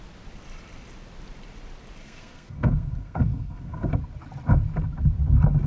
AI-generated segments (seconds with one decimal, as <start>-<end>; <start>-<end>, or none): 2.0-3.9

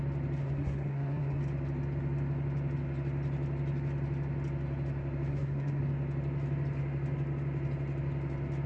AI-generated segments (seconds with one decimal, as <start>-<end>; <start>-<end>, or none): 0.4-1.4; 5.3-5.8

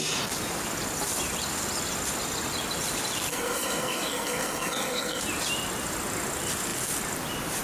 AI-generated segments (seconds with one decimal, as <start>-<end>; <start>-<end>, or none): 3.3-5.2

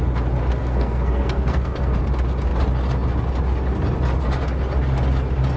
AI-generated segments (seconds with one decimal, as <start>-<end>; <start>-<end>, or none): 0.6-2.0

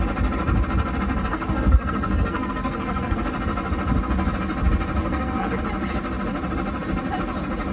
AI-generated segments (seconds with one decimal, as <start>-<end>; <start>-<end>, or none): 1.3-3.2; 5.0-5.5